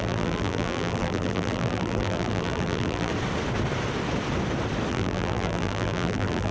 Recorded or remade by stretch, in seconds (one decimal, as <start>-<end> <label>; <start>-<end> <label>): 0.0-3.1 remade; 3.1-4.9 recorded; 4.9-6.5 remade